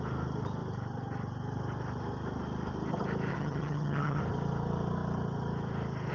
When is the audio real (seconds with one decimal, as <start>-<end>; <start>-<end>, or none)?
0.0-3.3; 4.2-6.1